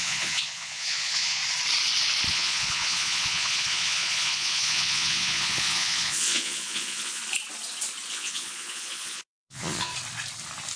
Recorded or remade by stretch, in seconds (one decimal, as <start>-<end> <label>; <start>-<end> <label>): 0.0-1.4 remade; 1.4-2.3 recorded; 2.3-7.2 remade; 7.2-8.1 recorded; 8.1-9.9 remade; 9.9-10.8 recorded